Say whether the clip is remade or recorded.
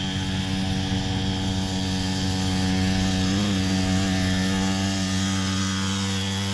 recorded